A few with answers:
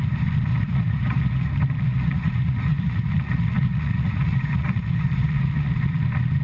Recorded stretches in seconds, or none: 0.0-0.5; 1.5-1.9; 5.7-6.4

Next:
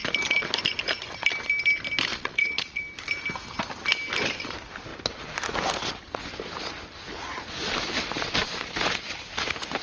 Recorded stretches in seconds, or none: 0.0-2.1; 2.8-9.8

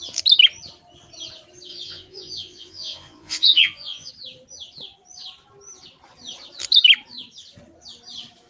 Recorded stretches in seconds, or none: 0.0-1.7; 4.1-8.5